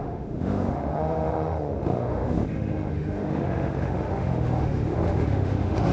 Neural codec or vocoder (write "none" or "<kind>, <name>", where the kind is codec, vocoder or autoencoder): autoencoder, DAC-VAE